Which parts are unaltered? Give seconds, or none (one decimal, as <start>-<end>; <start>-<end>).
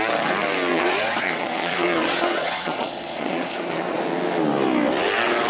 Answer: 0.0-0.7; 4.0-5.5